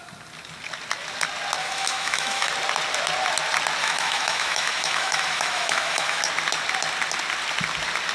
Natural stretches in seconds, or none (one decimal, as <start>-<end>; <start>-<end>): 0.0-1.6; 2.5-3.8; 6.2-8.1